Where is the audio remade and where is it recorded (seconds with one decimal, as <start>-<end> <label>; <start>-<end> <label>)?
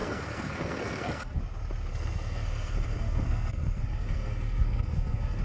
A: 0.0-1.4 remade; 1.4-1.9 recorded; 1.9-5.4 remade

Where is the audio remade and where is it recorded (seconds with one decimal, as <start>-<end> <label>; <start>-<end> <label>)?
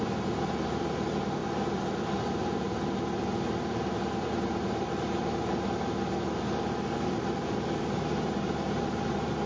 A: 0.0-9.5 recorded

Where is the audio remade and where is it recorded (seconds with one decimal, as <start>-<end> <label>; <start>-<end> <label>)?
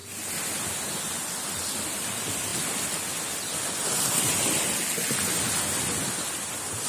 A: 0.0-6.9 recorded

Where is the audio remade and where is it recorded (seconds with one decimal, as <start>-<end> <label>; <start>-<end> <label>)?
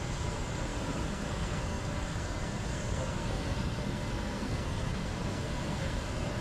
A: 0.0-6.4 remade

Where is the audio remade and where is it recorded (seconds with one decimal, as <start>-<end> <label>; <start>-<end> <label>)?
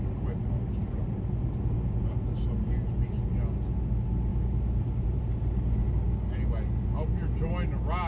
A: 0.0-8.1 recorded